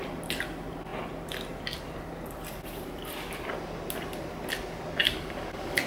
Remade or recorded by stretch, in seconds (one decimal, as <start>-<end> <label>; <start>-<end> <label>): 0.0-5.0 recorded; 5.0-5.9 remade